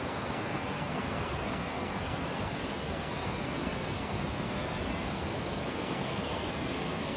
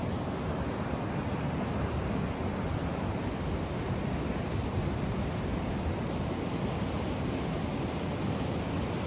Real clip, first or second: second